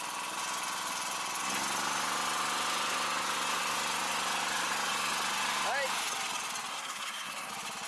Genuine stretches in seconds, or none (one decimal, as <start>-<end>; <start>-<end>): 0.0-6.7; 7.5-7.9